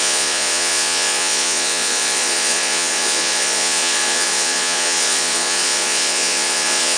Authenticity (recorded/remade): remade